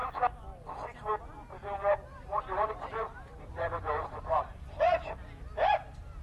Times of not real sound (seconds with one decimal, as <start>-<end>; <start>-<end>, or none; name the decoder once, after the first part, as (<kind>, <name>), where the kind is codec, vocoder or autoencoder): 2.1-5.1 (vocoder, BigVGAN v2)